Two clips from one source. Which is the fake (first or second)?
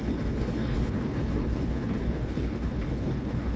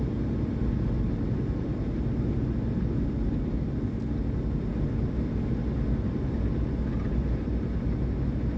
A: first